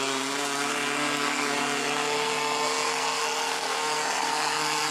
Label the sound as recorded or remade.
remade